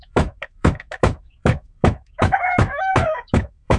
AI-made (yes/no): yes